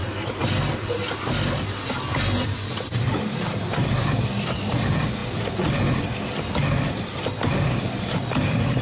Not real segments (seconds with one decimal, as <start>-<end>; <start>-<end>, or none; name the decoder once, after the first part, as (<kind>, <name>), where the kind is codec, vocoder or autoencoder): 1.9-8.8 (vocoder, BigVGAN v2)